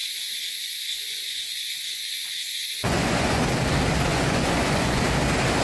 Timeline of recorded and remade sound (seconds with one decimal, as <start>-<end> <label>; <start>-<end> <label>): 0.0-3.4 remade; 3.4-4.1 recorded; 4.1-5.0 remade; 5.0-5.6 recorded